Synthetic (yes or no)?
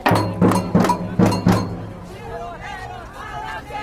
no